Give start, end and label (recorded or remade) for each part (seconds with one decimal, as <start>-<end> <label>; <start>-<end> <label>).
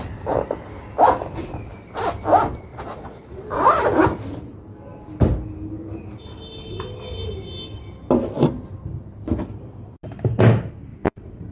0.0-2.7 recorded; 2.7-3.4 remade; 3.4-10.9 recorded; 10.9-11.5 remade